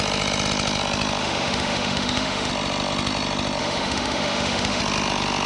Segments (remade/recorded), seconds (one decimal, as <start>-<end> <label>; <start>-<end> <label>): 0.0-1.2 recorded; 1.2-2.5 remade; 2.5-3.6 recorded; 3.6-4.8 remade; 4.8-5.5 recorded